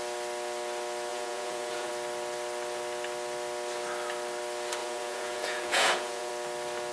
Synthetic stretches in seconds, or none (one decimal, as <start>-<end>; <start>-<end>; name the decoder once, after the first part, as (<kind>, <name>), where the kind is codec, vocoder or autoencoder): 1.1-1.9 (vocoder, Vocos); 4.8-6.3